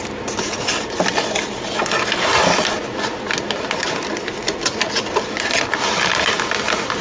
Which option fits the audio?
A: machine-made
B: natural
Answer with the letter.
B